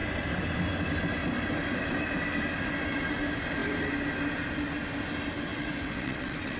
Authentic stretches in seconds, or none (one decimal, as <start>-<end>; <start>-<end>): 0.0-5.5